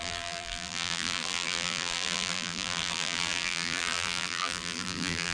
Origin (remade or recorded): remade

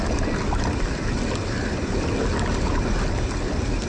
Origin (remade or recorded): recorded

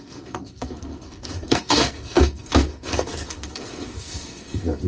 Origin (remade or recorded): remade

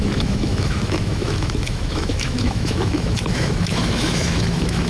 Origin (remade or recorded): remade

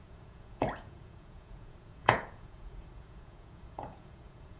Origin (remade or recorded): remade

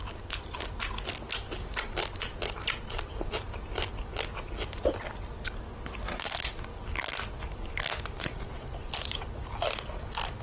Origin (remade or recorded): recorded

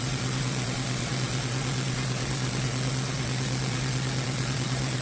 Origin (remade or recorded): remade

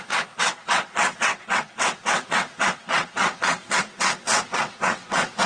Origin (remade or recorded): remade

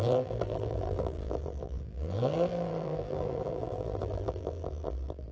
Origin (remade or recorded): remade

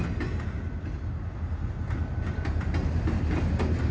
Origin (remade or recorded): recorded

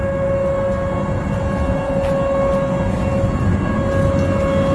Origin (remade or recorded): recorded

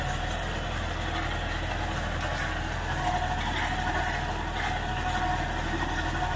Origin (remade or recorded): recorded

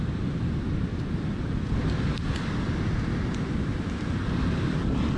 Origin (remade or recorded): recorded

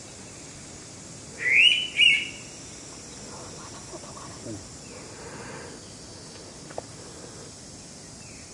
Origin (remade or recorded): recorded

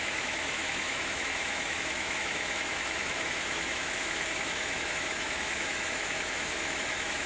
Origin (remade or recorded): remade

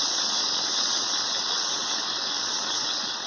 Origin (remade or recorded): remade